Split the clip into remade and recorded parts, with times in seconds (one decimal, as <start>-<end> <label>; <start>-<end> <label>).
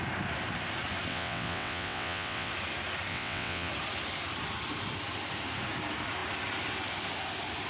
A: 0.0-1.1 recorded; 1.1-2.5 remade; 2.5-3.1 recorded; 3.1-3.7 remade; 3.7-7.7 recorded